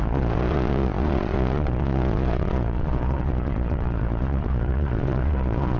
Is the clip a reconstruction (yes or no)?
yes